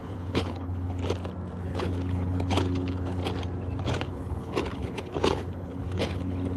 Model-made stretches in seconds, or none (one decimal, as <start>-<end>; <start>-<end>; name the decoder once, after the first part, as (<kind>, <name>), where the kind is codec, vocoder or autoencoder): 0.0-1.0 (codec, HILCodec); 1.6-3.2; 3.8-6.6